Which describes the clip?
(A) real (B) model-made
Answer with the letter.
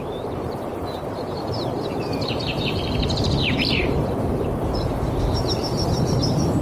B